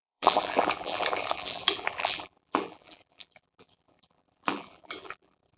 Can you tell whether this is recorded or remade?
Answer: remade